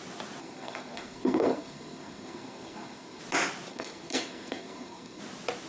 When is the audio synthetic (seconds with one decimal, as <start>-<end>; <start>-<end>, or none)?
0.4-3.2; 3.7-5.2